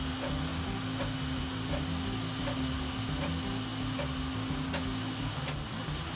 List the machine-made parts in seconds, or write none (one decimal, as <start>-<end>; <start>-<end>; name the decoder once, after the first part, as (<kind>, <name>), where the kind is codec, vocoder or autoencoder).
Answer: none